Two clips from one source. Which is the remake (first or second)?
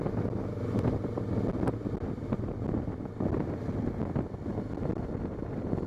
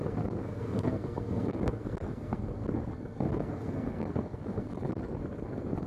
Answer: second